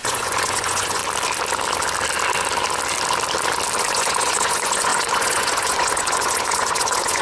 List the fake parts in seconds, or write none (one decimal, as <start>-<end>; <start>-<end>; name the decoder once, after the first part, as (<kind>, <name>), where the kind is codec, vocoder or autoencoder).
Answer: 0.0-1.0 (vocoder, Vocos); 3.8-7.2